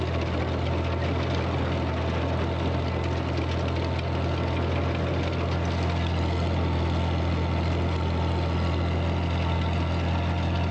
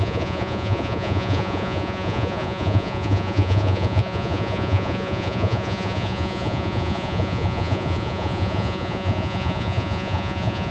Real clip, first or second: first